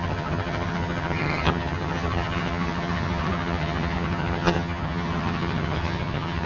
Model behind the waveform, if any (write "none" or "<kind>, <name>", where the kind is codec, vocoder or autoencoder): vocoder, HiFi-GAN